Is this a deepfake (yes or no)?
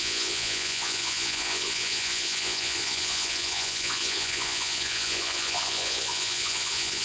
yes